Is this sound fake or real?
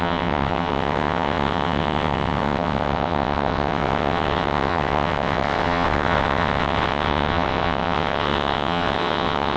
fake